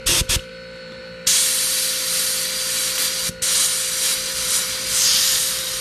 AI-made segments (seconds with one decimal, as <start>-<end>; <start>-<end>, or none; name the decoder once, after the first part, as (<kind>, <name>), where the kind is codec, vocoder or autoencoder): 0.5-1.0 (vocoder, BigVGAN v2); 3.0-5.8